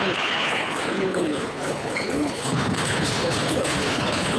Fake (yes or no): yes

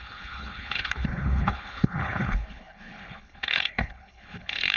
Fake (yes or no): yes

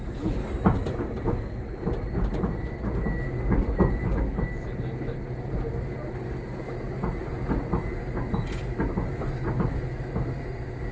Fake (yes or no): no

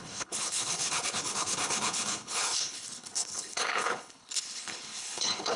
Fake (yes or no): yes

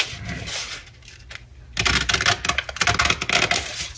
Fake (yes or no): no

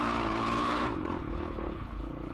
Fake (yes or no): yes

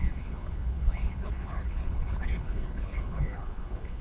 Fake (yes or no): yes